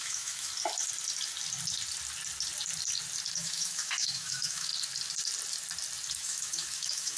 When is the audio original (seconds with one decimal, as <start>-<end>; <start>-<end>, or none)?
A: 0.5-3.4; 4.7-6.1